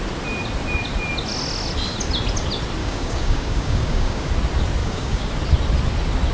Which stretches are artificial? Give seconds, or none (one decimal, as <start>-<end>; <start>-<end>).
2.8-4.3; 4.8-5.3